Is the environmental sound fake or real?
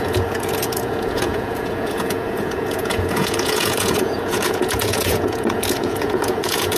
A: fake